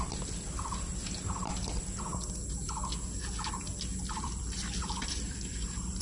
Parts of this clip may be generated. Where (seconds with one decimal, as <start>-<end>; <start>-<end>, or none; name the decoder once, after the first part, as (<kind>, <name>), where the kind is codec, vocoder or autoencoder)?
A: 0.0-0.9 (vocoder, BigVGAN v2); 4.1-6.0